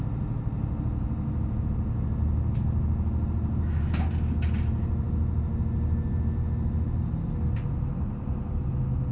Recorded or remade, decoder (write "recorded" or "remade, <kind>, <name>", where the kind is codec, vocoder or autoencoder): recorded